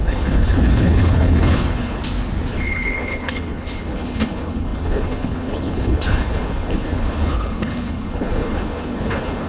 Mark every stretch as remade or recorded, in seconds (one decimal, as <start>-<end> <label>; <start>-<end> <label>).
0.0-2.0 remade; 2.0-2.5 recorded; 2.5-9.5 remade